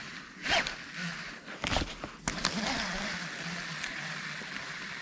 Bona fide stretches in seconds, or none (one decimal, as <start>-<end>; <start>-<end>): 0.0-5.0